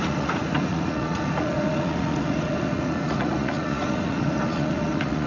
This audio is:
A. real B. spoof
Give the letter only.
B